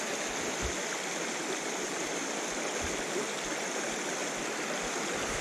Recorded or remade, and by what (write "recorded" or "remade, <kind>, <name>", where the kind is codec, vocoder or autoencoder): recorded